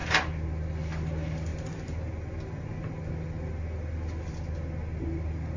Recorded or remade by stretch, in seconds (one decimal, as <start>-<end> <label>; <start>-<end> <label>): 0.0-5.6 recorded